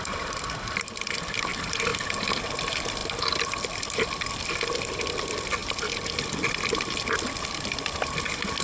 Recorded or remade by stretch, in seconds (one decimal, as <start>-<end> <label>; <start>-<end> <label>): 0.0-1.9 remade; 1.9-2.5 recorded; 2.5-8.6 remade